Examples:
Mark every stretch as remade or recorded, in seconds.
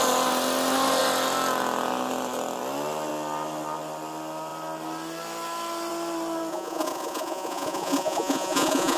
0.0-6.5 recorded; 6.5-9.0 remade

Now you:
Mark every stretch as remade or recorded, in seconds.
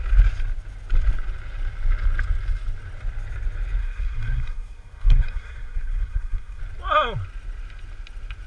0.0-3.8 recorded; 3.8-6.6 remade; 6.6-8.5 recorded